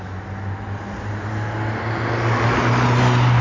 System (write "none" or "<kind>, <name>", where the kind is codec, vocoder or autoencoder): none